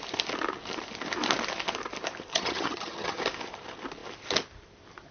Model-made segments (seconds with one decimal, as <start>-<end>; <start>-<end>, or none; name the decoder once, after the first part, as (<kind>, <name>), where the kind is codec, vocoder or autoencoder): 2.3-3.2 (vocoder, HiFi-GAN)